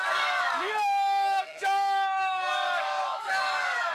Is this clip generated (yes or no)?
yes